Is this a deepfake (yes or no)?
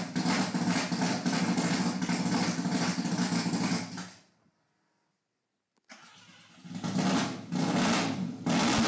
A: no